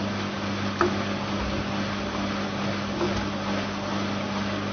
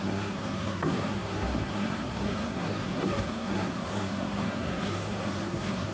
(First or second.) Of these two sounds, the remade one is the second